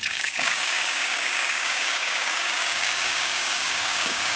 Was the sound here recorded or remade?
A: remade